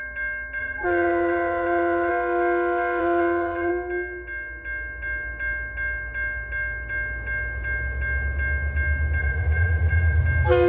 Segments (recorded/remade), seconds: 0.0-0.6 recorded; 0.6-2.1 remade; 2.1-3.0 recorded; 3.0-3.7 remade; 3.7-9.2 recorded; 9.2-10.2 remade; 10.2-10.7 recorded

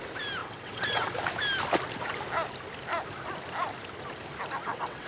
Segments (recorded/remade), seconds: 0.0-0.4 recorded; 0.4-1.1 remade; 1.1-4.6 recorded; 4.6-5.1 remade

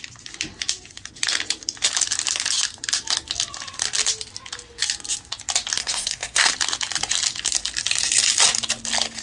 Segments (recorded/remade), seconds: 0.0-5.8 recorded; 5.8-6.5 remade; 6.5-9.2 recorded

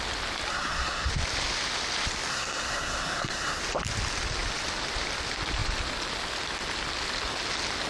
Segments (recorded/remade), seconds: 0.0-0.5 recorded; 0.5-1.1 remade; 1.1-2.3 recorded; 2.3-3.6 remade; 3.6-7.9 recorded

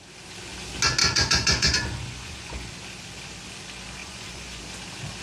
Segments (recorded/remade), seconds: 0.0-1.0 recorded; 1.0-2.7 remade; 2.7-4.0 recorded; 4.0-4.6 remade; 4.6-5.2 recorded

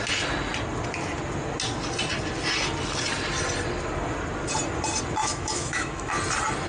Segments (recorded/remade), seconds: 0.0-5.2 recorded; 5.2-6.1 remade; 6.1-6.7 recorded

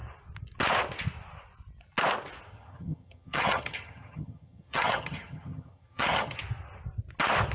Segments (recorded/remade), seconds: 0.0-2.5 recorded; 2.5-6.4 remade; 6.4-7.5 recorded

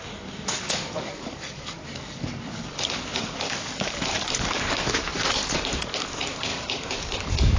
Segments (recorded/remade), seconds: 0.0-7.6 remade